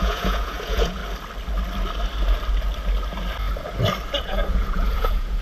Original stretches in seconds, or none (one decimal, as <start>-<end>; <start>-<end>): 1.0-4.2